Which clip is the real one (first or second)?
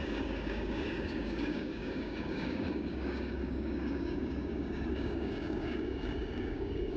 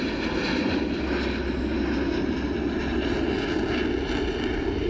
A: second